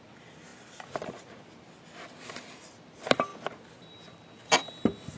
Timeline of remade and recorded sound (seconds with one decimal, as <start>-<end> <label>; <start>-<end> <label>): 0.0-5.2 recorded